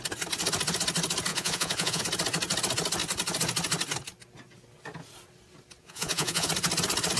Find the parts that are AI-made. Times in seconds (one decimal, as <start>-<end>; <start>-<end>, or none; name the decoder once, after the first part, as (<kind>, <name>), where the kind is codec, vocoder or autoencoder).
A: 1.3-2.0 (vocoder, Vocos); 5.8-6.5